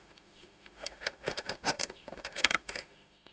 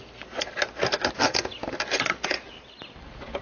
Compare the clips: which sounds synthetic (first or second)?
first